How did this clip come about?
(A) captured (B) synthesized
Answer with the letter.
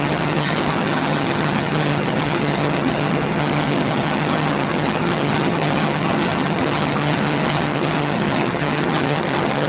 B